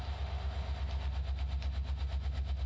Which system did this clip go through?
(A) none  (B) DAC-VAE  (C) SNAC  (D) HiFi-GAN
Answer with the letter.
A